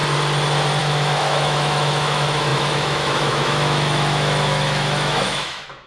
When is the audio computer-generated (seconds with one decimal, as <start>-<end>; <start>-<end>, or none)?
0.8-5.9